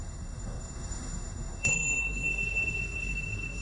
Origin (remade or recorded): remade